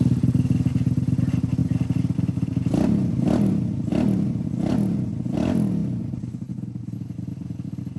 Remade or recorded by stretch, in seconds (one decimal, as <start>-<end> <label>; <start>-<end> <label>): 0.0-8.0 recorded